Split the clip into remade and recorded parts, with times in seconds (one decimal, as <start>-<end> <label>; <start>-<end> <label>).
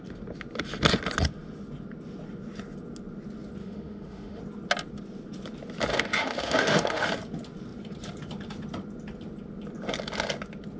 0.0-3.6 recorded; 3.6-4.4 remade; 4.4-5.9 recorded; 5.9-7.1 remade; 7.1-10.8 recorded